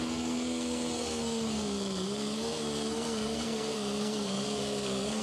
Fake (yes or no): yes